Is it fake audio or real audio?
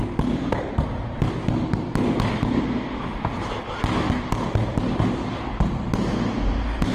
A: real